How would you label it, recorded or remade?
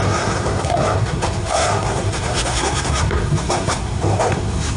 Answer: remade